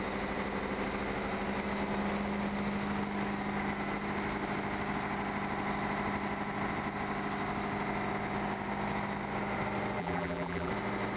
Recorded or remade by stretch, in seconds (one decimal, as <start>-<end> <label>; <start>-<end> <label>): 0.0-10.0 recorded; 10.0-10.7 remade; 10.7-11.2 recorded